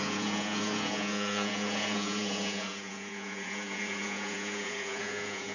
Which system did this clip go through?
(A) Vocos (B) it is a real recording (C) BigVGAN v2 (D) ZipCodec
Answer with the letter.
A